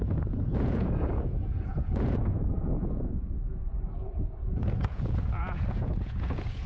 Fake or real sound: fake